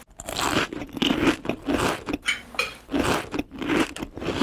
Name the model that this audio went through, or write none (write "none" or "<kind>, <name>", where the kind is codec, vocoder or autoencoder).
none